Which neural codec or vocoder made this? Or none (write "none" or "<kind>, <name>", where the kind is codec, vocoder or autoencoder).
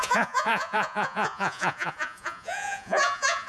vocoder, Vocos